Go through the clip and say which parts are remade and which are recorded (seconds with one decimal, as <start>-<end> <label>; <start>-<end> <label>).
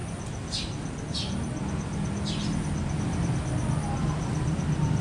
0.0-5.0 recorded